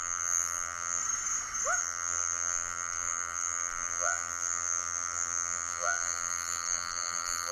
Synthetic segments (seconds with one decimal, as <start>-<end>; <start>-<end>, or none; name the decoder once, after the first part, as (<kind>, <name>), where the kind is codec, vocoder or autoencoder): 0.0-1.0 (vocoder, BigVGAN v2); 1.8-7.5